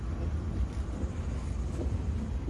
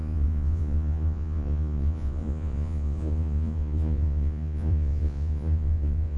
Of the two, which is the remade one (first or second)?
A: second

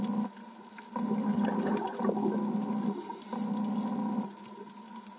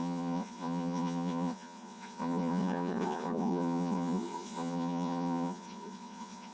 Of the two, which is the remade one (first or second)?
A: second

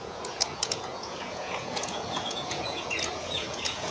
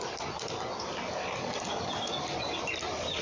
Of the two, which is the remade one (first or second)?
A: first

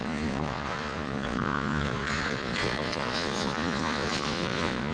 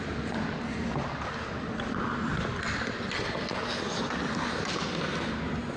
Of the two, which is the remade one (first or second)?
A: first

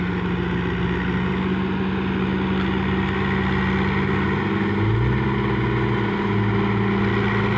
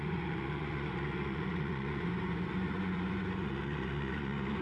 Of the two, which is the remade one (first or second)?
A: second